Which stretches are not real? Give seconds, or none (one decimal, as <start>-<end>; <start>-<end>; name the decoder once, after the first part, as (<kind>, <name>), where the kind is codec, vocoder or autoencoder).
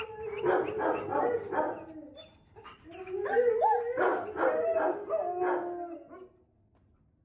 none